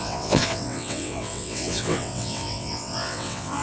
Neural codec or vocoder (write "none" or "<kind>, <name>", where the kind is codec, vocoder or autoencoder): vocoder, WaveNeXt